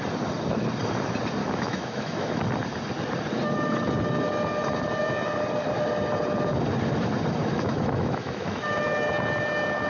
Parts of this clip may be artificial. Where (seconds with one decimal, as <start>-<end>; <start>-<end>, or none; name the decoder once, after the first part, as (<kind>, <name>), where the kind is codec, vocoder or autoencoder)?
1.4-2.4 (autoencoder, DAC-VAE); 7.4-8.6